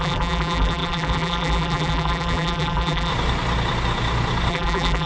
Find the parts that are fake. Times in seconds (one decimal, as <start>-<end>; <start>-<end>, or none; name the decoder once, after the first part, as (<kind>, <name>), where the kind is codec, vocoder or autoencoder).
0.0-3.1 (vocoder, BigVGAN v2); 4.5-5.1